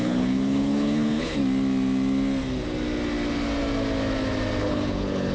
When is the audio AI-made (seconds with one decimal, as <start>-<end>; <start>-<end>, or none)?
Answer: 0.0-1.4; 4.6-5.3